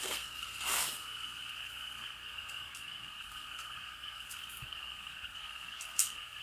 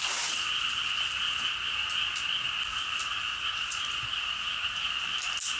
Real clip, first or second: second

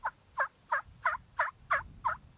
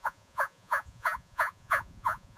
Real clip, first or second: first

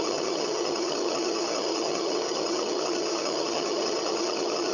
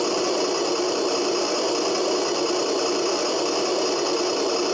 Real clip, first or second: second